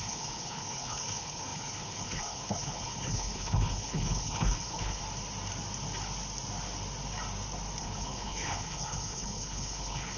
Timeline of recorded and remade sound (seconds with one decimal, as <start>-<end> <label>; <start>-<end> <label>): 0.0-5.0 remade; 5.0-7.8 recorded; 7.8-10.2 remade